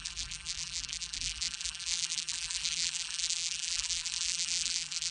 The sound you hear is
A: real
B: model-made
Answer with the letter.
B